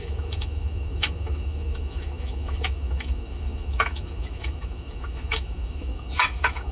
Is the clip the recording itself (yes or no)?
no